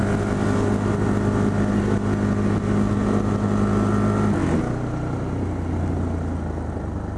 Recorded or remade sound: recorded